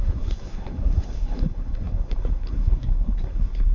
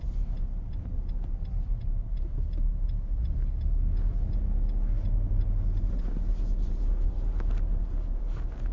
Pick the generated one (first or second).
first